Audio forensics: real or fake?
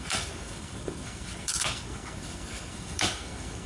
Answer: fake